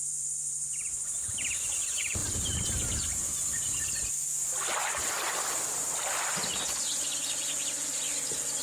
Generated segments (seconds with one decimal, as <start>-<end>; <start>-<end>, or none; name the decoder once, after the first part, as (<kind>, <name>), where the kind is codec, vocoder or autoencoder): 2.2-4.0 (vocoder, BigVGAN v2); 4.8-5.6; 6.4-7.9